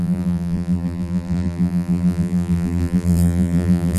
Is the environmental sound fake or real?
fake